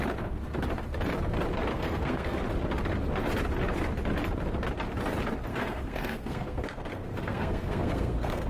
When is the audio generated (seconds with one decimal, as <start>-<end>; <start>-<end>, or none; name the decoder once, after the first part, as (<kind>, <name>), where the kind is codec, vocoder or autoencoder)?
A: 1.7-2.4 (codec, SNAC); 5.5-8.5